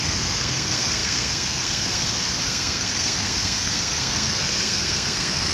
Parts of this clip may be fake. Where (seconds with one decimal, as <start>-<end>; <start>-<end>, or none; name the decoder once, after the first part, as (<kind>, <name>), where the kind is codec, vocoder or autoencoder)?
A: 0.0-5.5 (codec, SNAC)